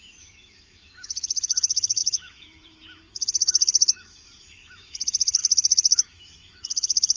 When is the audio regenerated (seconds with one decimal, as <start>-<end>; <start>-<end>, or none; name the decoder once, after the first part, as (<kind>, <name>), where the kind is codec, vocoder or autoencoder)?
0.0-7.2 (autoencoder, DAC-VAE)